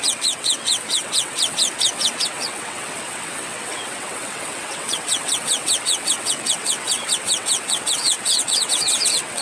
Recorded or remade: remade